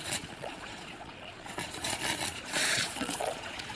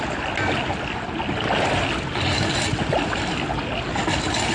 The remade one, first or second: first